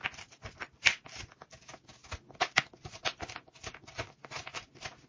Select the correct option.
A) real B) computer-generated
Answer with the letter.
A